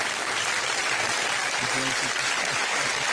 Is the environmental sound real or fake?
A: real